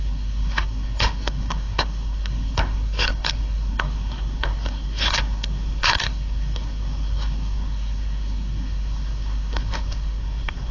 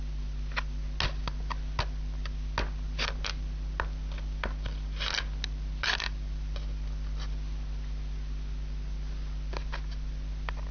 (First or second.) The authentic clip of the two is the second